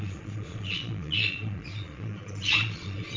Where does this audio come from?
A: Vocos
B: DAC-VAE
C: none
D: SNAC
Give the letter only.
A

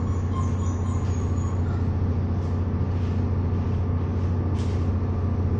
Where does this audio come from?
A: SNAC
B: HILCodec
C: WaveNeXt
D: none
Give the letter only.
D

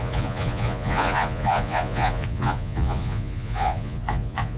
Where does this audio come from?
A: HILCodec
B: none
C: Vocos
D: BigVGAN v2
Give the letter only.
C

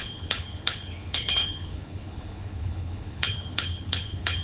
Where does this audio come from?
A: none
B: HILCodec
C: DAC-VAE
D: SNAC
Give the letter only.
B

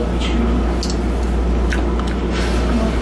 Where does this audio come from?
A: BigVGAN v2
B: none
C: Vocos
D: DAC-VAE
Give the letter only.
B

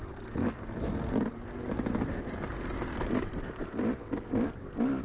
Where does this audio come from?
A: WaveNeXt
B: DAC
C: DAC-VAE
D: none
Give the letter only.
D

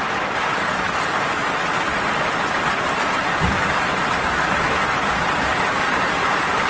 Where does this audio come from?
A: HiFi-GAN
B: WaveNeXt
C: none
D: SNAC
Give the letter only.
C